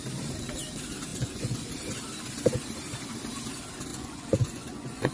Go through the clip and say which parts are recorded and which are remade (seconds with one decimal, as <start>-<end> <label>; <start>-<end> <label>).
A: 0.0-1.1 recorded; 1.1-1.7 remade; 1.7-3.9 recorded; 3.9-5.1 remade